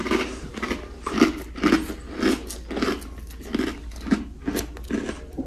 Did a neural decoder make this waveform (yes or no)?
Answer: no